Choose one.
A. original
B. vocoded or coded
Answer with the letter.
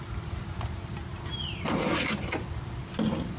A